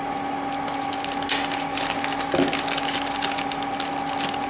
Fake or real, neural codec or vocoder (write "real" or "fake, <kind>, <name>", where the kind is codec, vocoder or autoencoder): real